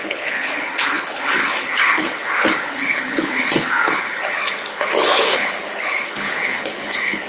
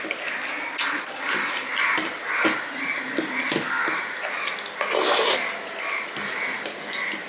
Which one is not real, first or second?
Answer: first